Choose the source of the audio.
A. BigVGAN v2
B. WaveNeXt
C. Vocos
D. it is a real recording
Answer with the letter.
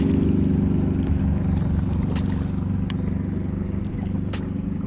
D